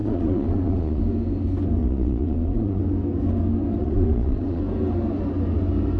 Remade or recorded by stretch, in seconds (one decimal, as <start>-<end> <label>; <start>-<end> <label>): 0.0-1.0 remade; 1.0-1.8 recorded; 1.8-2.8 remade; 2.8-3.8 recorded; 3.8-4.6 remade; 4.6-6.0 recorded